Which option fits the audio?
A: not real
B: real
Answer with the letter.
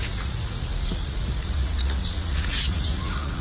A